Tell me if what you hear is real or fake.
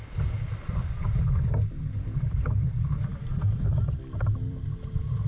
fake